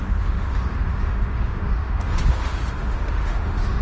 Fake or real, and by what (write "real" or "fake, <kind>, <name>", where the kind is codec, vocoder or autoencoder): fake, autoencoder, DAC-VAE